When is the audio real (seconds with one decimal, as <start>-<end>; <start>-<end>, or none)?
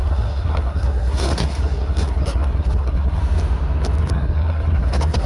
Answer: 3.2-4.0